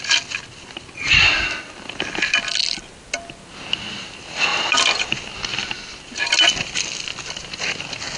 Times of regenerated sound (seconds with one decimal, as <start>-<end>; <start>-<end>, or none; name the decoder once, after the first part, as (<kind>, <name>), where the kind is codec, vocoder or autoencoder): none